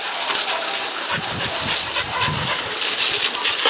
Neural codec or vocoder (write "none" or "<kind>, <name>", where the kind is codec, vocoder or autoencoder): none